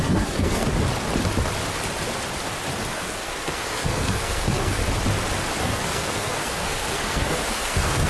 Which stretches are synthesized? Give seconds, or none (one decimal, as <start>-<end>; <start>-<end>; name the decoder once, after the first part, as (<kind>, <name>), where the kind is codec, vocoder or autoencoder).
0.0-0.6 (codec, SNAC); 2.9-4.8; 5.6-8.1